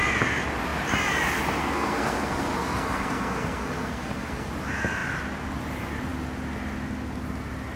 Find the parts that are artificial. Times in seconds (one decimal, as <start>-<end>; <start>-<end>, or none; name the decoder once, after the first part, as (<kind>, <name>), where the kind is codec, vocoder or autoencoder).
1.6-4.5 (codec, SNAC)